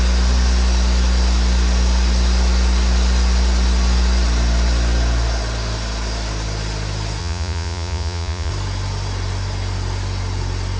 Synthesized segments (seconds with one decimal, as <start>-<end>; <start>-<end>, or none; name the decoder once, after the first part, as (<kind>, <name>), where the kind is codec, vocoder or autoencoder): 7.2-8.5 (vocoder, Vocos)